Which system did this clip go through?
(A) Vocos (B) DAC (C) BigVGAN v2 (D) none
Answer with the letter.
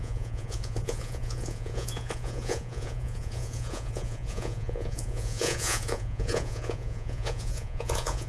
A